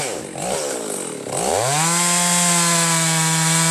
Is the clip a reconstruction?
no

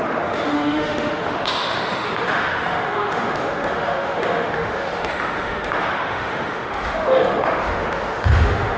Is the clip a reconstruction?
yes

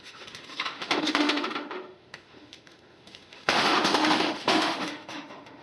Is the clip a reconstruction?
yes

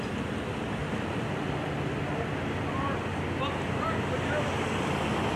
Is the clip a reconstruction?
no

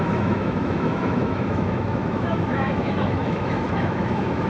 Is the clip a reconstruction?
yes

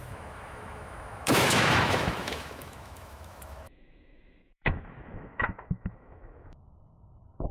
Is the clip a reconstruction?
yes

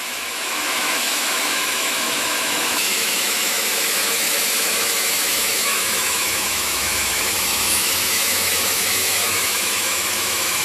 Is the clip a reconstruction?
yes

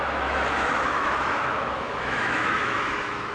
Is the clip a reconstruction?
yes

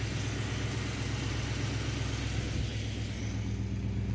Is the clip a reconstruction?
no